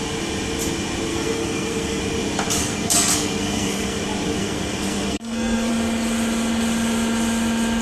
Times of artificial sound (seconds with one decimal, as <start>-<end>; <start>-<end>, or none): 1.1-2.0; 2.6-4.0; 4.4-5.7